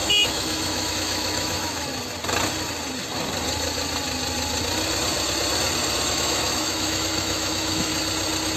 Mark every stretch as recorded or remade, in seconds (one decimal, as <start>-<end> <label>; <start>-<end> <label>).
0.0-1.9 remade; 1.9-6.1 recorded; 6.1-7.9 remade; 7.9-8.6 recorded